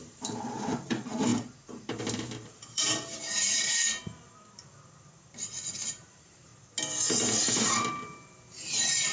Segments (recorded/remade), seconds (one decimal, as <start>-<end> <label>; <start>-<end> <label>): 0.0-3.8 remade; 3.8-5.7 recorded; 5.7-6.5 remade; 6.5-7.4 recorded; 7.4-9.1 remade